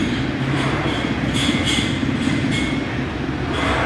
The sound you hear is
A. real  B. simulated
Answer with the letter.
A